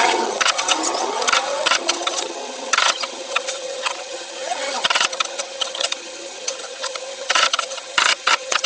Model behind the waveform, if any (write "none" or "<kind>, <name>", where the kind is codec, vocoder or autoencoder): vocoder, HiFi-GAN